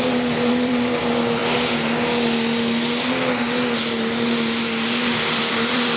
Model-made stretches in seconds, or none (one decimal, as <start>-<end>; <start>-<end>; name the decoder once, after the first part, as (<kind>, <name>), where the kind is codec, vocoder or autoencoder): 0.0-1.4 (vocoder, BigVGAN v2); 5.0-6.0